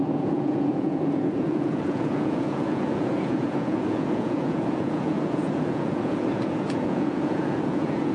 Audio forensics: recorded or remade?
remade